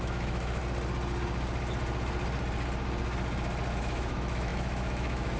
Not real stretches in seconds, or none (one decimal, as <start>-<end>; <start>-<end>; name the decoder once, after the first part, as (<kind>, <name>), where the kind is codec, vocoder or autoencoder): 0.0-0.6 (autoencoder, DAC-VAE); 3.8-5.4